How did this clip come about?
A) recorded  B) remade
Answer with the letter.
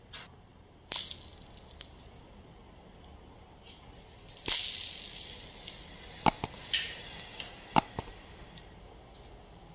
A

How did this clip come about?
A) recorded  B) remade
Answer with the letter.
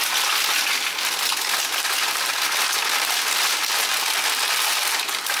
B